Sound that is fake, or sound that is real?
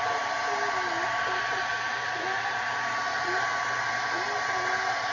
real